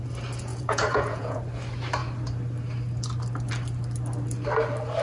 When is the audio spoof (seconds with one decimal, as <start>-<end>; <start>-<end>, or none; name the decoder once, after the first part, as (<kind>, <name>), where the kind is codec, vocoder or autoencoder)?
0.5-1.4 (vocoder, Vocos)